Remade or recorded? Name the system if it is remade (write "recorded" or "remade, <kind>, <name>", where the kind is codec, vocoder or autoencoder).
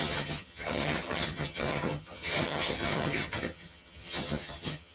remade, vocoder, HiFi-GAN